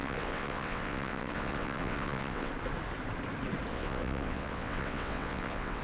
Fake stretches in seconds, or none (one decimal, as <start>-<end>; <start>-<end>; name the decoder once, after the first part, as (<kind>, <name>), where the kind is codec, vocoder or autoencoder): 0.0-2.5 (vocoder, WaveNeXt); 3.7-5.8